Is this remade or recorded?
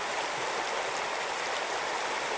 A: recorded